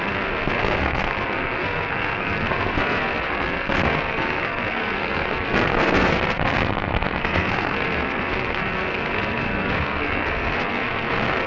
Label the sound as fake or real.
fake